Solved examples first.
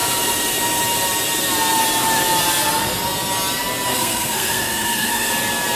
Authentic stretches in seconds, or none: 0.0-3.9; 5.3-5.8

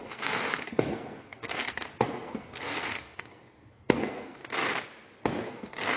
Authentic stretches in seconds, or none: 4.4-5.5

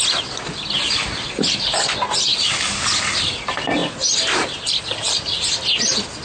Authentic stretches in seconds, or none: 0.0-6.2

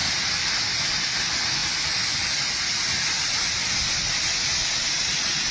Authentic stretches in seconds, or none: 0.0-5.5

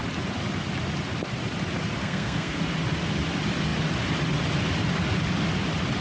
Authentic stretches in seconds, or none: 0.0-2.0; 2.6-6.0

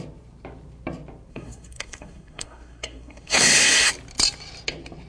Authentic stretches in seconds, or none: 0.0-1.3; 3.9-5.1

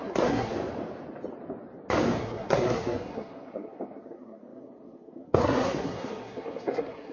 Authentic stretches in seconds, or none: 0.5-2.2

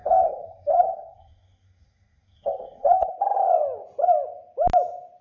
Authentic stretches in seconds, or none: 3.1-5.2